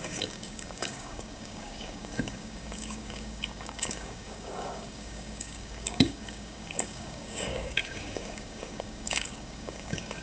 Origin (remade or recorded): remade